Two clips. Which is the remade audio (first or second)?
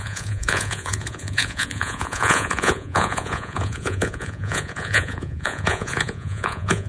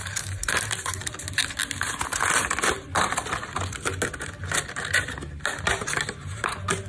first